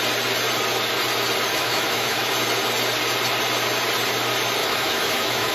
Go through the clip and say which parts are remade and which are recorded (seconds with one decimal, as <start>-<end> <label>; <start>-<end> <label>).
0.0-1.5 recorded; 1.5-2.3 remade; 2.3-4.6 recorded; 4.6-5.5 remade